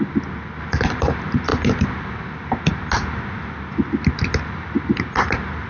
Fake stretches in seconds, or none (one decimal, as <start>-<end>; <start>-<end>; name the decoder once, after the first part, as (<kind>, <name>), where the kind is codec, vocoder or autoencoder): none